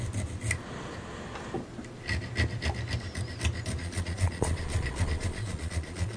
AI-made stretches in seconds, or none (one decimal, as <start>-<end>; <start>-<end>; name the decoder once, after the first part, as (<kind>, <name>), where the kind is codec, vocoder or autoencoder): 3.8-6.2 (vocoder, Vocos)